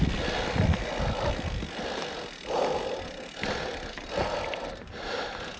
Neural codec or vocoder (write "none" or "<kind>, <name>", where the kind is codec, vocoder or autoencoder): none